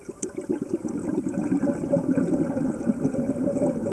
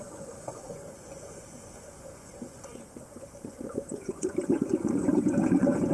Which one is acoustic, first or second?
first